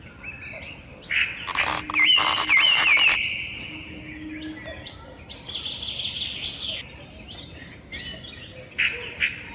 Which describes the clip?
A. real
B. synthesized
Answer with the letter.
A